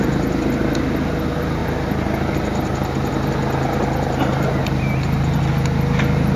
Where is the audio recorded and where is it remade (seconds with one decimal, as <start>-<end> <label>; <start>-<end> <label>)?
0.0-4.6 recorded; 4.6-5.4 remade; 5.4-6.4 recorded